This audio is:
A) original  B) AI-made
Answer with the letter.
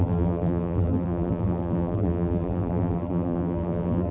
B